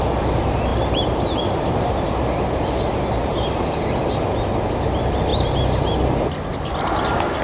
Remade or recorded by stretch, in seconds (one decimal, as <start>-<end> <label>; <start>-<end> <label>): 0.0-3.2 recorded; 3.2-3.9 remade; 3.9-5.3 recorded; 5.3-5.8 remade; 5.8-7.4 recorded